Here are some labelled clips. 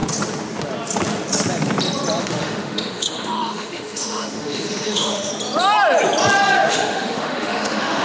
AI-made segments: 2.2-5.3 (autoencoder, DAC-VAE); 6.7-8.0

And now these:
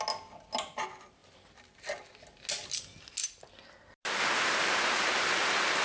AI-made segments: none

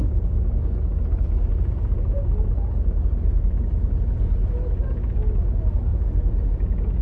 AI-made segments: none